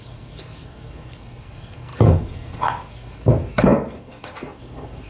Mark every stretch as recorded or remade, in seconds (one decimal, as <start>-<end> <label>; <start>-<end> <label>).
0.0-5.1 remade